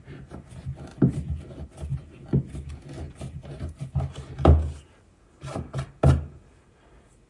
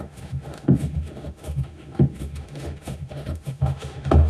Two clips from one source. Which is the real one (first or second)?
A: first